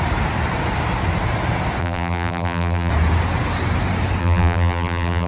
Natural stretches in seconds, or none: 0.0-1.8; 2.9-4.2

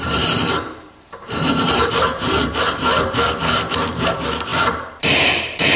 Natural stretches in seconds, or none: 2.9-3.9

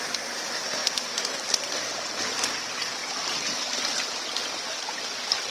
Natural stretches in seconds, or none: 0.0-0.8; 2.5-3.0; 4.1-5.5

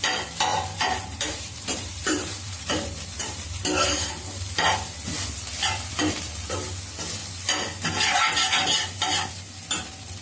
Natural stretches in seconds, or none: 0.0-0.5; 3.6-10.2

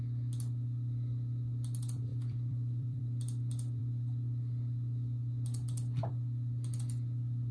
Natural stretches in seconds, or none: 0.0-2.1; 3.0-7.5

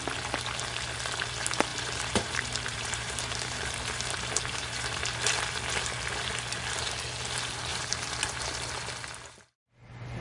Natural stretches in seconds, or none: 0.0-1.7; 5.4-7.7; 8.7-10.2

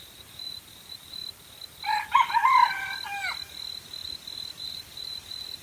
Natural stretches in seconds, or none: 1.2-4.6

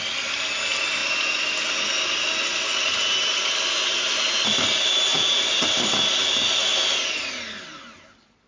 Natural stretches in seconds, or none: 0.0-8.5